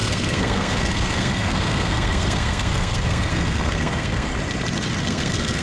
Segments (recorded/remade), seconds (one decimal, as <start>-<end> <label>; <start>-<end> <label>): 0.0-4.3 remade; 4.3-5.0 recorded; 5.0-5.6 remade